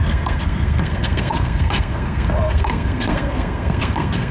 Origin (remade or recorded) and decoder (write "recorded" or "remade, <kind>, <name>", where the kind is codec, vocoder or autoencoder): remade, codec, SNAC